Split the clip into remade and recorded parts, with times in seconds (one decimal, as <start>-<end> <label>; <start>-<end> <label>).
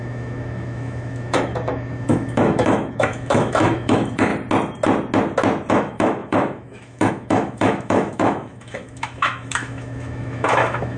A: 0.0-4.3 remade; 4.3-5.7 recorded; 5.7-11.0 remade